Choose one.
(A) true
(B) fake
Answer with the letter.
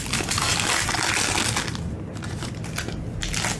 A